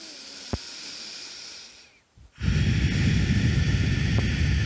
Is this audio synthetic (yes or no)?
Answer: no